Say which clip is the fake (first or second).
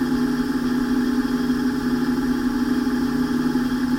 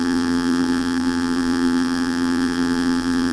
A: second